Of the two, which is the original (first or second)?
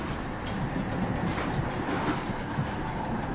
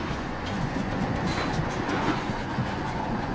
first